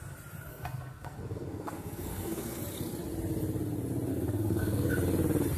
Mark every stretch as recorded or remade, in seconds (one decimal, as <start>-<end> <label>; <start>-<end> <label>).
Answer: 0.0-0.5 recorded; 0.5-2.6 remade; 2.6-4.1 recorded; 4.1-4.9 remade; 4.9-5.6 recorded